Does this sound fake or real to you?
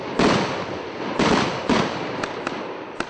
fake